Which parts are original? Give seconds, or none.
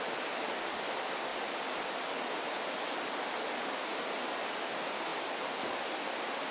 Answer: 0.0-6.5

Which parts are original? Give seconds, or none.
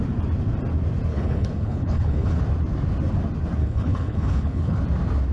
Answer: 0.0-1.1; 2.4-3.6; 4.8-5.3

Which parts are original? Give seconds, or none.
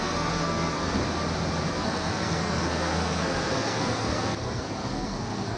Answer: 1.0-1.7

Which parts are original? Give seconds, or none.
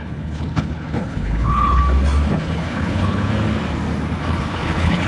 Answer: 1.8-2.3; 3.3-4.2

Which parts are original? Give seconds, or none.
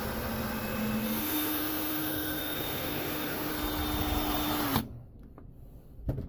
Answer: 0.0-1.2; 3.5-6.3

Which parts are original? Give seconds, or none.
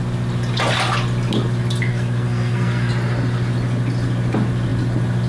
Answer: 0.0-1.9; 2.9-5.3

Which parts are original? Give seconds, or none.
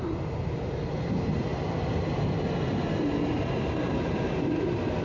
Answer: 0.0-5.0